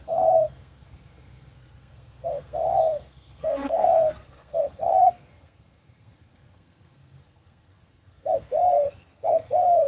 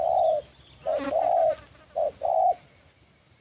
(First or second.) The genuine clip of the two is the second